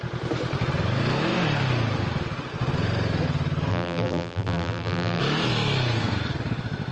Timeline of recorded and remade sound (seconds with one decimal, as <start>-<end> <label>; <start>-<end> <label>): 0.0-3.7 recorded; 3.7-5.2 remade; 5.2-6.9 recorded

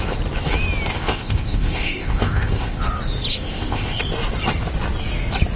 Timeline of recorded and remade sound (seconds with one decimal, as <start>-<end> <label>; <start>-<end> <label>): 0.0-0.9 recorded; 0.9-2.8 remade; 2.8-3.3 recorded; 3.3-4.0 remade; 4.0-5.6 recorded

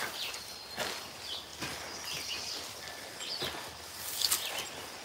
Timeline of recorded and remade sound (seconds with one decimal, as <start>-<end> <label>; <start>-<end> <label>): 0.0-5.0 recorded

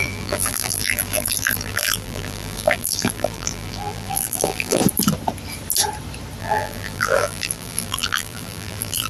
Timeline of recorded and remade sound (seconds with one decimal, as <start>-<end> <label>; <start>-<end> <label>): 0.0-4.8 remade; 4.8-6.4 recorded; 6.4-9.1 remade

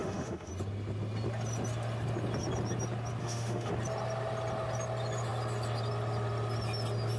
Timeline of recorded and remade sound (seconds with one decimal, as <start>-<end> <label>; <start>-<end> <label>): 0.0-0.5 remade; 0.5-3.2 recorded; 3.2-3.7 remade; 3.7-7.2 recorded

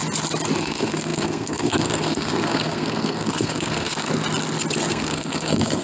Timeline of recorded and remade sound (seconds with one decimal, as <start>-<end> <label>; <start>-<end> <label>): 0.0-0.6 recorded; 0.6-4.1 remade; 4.1-4.9 recorded; 4.9-5.8 remade